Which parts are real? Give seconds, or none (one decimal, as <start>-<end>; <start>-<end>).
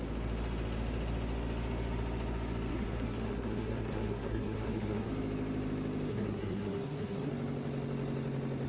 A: 0.0-2.7; 5.1-6.1; 7.3-8.7